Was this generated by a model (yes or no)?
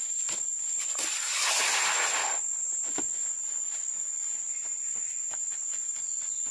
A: no